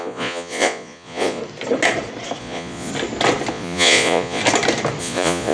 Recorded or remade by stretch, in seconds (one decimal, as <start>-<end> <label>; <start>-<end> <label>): 0.0-1.4 remade; 1.4-2.4 recorded; 2.4-2.9 remade; 2.9-3.5 recorded; 3.5-4.4 remade; 4.4-5.0 recorded; 5.0-5.5 remade